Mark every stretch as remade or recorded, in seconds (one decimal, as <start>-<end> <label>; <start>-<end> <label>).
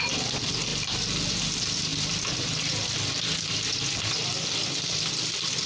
0.0-0.7 remade; 0.7-1.3 recorded; 1.3-5.7 remade